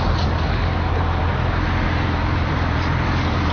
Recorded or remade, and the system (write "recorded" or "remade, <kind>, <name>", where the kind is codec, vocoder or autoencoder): recorded